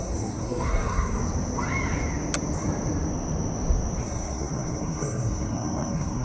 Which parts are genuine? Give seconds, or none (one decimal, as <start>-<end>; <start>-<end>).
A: 1.2-4.0